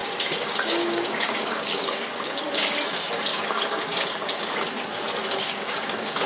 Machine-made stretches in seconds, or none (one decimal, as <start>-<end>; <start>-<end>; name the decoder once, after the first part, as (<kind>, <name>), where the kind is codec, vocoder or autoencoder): 0.0-2.4 (codec, DAC); 3.3-4.2; 5.2-6.3